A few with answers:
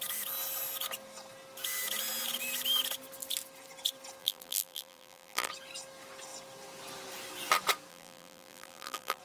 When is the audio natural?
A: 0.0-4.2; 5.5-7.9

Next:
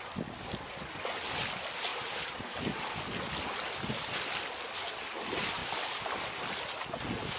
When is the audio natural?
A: 0.0-1.9; 3.0-5.6; 6.2-7.4